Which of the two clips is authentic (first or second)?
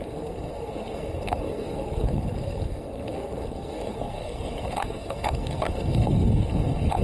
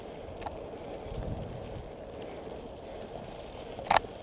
second